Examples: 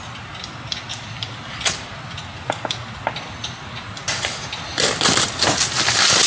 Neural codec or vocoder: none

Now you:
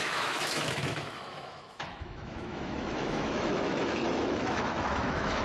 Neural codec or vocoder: autoencoder, DAC-VAE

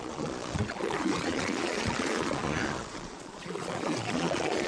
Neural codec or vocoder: vocoder, Vocos